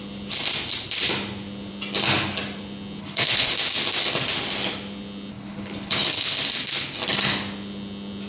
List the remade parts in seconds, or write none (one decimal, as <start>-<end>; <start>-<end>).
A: 3.0-3.5; 5.3-6.4